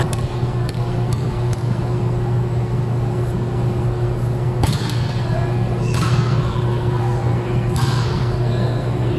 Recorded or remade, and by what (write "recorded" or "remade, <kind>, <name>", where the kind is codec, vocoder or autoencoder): remade, codec, SNAC